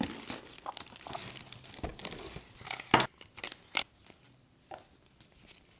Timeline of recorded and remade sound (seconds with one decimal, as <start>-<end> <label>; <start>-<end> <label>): 0.0-5.8 recorded